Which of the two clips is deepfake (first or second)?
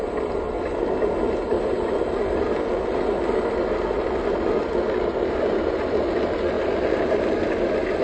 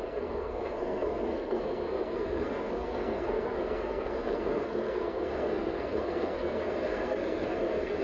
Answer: second